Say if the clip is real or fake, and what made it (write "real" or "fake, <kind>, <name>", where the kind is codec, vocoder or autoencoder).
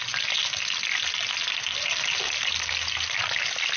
real